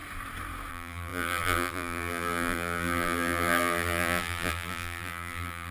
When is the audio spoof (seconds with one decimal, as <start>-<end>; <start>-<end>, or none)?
0.7-5.7